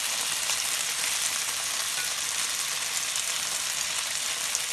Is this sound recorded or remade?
recorded